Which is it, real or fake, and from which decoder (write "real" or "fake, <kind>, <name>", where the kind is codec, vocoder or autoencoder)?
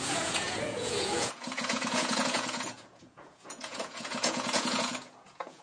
fake, vocoder, Vocos